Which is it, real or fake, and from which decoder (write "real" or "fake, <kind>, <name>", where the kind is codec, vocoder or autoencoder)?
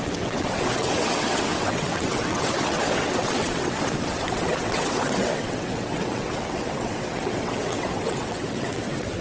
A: fake, vocoder, WaveNeXt